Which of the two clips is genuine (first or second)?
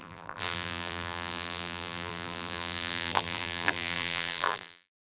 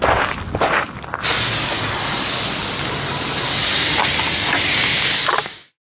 second